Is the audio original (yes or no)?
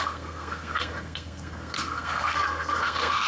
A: no